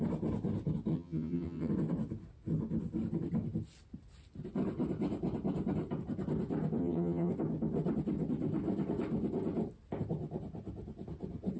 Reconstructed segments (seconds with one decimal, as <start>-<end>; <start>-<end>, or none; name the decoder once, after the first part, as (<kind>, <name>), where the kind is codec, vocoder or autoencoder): 0.9-1.7 (vocoder, HiFi-GAN); 6.8-7.3